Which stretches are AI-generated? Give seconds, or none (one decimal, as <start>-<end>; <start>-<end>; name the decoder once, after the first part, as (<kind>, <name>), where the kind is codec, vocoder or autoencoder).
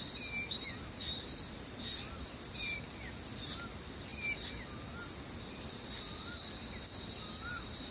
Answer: none